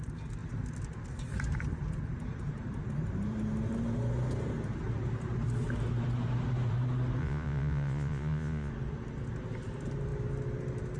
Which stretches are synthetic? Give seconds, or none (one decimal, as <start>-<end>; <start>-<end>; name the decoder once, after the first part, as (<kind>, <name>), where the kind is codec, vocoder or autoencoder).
7.2-8.7 (vocoder, Vocos)